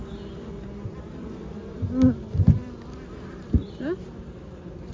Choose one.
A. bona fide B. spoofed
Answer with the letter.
A